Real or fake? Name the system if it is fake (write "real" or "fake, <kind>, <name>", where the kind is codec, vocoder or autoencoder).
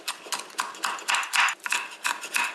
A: real